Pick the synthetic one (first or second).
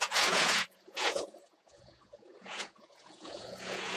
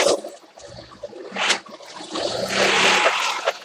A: first